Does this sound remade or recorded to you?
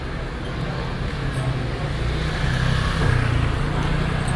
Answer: recorded